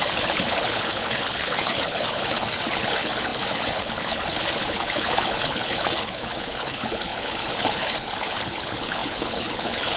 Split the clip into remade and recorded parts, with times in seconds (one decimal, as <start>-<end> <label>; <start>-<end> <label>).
0.0-10.0 remade